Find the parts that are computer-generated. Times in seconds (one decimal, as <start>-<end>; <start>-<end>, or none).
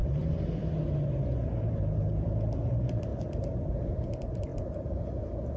0.0-2.7; 4.5-5.0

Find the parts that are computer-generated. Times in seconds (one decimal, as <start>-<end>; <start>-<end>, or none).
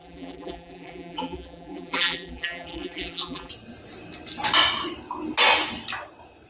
0.0-3.5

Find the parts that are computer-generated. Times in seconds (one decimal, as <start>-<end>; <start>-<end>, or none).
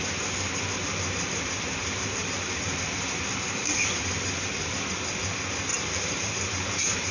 1.8-4.0; 5.7-7.1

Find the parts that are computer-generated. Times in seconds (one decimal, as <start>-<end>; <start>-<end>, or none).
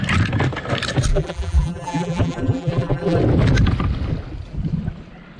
1.1-3.2